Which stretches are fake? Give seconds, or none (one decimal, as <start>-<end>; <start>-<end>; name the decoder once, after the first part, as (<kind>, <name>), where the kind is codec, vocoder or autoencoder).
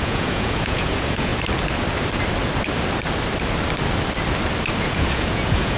0.0-1.3 (vocoder, Vocos); 4.8-5.8